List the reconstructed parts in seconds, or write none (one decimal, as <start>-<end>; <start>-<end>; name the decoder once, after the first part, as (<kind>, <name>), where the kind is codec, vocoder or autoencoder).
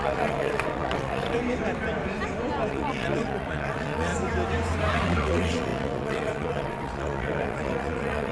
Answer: 0.0-1.4 (vocoder, WaveNeXt); 2.7-4.1; 4.9-8.3